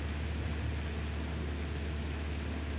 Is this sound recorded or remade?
recorded